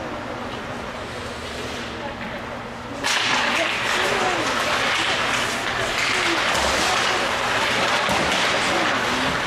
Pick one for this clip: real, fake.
real